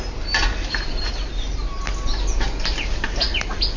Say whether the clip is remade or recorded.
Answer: recorded